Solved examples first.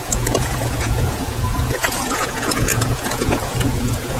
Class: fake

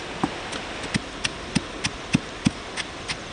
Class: real